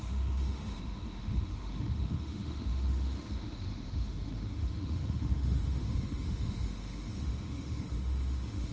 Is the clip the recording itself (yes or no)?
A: no